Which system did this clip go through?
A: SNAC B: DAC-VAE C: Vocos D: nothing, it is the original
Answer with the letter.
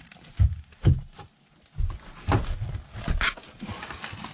D